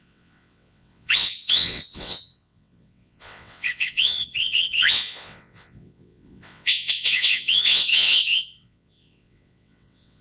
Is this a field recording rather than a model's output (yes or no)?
no